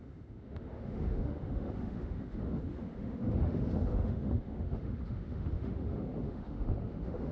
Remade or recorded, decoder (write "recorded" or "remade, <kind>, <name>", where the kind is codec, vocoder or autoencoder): remade, autoencoder, DAC-VAE